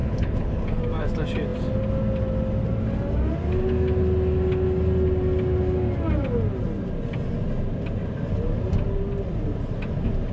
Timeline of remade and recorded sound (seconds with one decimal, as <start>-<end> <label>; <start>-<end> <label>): 0.0-0.8 remade; 0.8-10.3 recorded